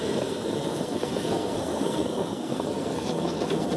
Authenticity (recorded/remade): remade